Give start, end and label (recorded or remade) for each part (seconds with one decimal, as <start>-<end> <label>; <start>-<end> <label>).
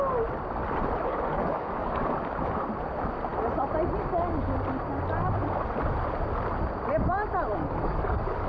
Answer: 0.0-1.1 recorded; 1.1-2.0 remade; 2.0-7.6 recorded; 7.6-8.5 remade